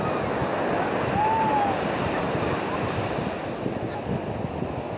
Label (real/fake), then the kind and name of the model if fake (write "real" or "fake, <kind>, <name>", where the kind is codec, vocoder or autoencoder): real